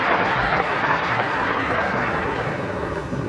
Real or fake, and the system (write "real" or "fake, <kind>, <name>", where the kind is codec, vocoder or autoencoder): fake, codec, SNAC